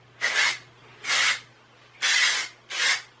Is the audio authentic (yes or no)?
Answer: yes